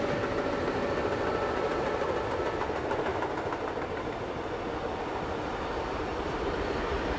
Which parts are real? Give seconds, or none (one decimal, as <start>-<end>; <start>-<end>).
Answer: 0.0-6.1